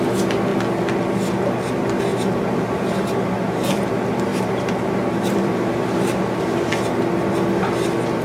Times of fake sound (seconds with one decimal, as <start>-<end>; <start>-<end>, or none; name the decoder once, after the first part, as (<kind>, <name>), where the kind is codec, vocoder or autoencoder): 2.1-3.9 (vocoder, BigVGAN v2); 4.3-6.7